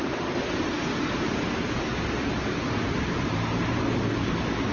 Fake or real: real